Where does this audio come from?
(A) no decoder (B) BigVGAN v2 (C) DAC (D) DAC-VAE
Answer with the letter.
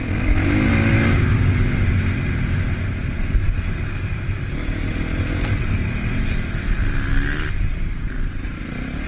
A